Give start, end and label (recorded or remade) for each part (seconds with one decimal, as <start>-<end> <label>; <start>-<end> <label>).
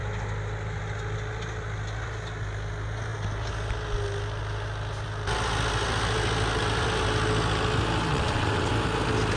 0.0-8.1 recorded; 8.1-8.7 remade; 8.7-9.4 recorded